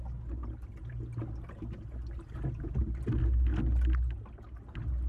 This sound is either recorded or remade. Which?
recorded